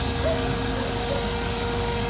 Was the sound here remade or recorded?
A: remade